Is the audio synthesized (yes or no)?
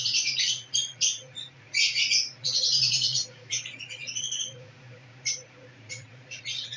yes